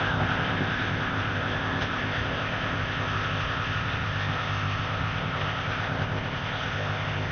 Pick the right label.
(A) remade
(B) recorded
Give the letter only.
A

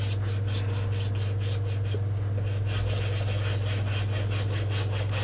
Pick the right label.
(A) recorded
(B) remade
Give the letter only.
A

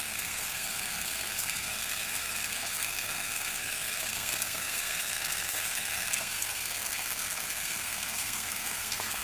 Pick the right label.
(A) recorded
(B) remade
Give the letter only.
B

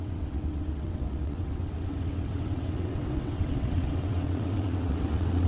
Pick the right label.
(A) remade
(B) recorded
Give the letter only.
A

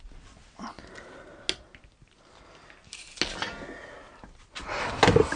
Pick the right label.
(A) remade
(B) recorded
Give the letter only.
B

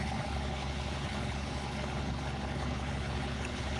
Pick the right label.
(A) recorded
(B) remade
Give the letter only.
B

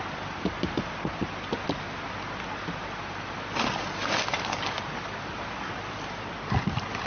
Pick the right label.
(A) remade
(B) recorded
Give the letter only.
B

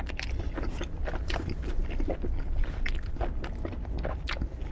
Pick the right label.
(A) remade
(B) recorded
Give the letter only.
B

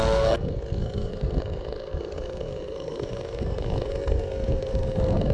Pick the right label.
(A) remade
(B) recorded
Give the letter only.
A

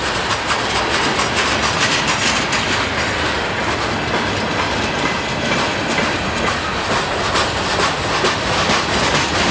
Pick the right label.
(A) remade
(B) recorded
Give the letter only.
B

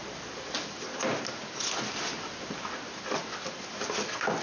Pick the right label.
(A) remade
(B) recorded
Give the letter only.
B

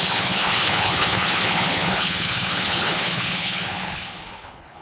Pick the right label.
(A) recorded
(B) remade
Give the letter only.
B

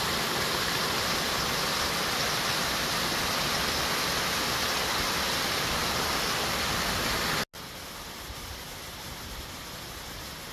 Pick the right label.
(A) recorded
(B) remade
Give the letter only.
A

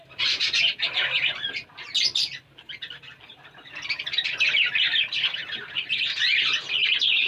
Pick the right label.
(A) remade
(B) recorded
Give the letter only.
B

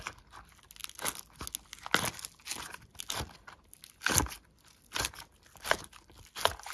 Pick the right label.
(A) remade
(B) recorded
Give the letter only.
B